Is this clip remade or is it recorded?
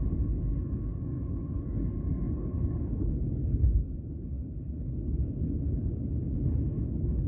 remade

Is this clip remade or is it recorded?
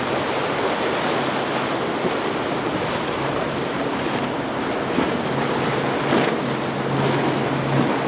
recorded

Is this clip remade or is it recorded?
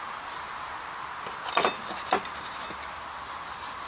recorded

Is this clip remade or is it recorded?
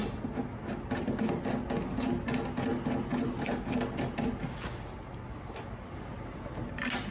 recorded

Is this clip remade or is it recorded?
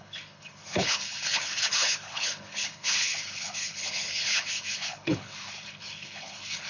remade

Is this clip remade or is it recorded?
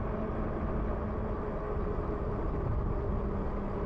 recorded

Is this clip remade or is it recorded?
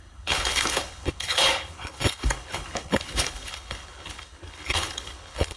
remade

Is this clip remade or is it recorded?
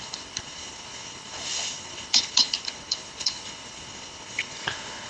remade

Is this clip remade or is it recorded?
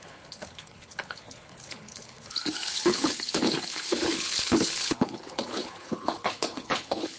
remade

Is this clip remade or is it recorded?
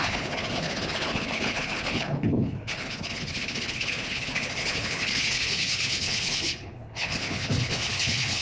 remade